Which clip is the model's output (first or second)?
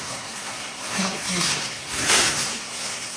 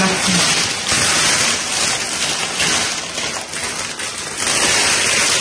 first